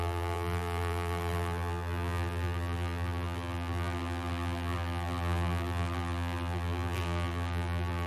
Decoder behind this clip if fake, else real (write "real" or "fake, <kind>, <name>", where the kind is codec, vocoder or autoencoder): fake, vocoder, BigVGAN v2